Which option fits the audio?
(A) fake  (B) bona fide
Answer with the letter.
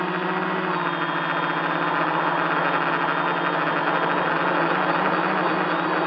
B